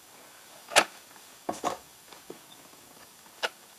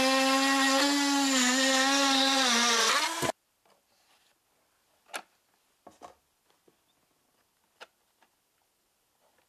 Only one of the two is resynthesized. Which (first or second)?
first